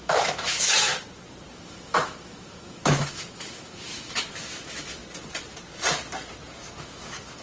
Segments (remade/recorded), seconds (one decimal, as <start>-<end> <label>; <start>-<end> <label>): 0.0-0.9 remade; 0.9-1.5 recorded; 1.5-5.0 remade; 5.0-6.8 recorded; 6.8-7.4 remade